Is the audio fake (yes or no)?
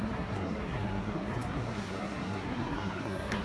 yes